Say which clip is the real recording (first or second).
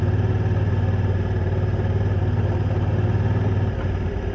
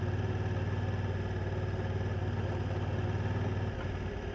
second